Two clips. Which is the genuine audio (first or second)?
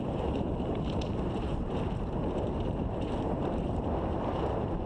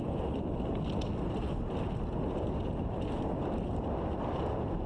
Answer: second